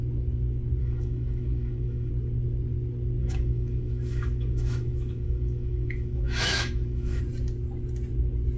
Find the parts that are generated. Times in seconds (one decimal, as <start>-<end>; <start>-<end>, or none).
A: 0.8-2.1; 3.2-7.2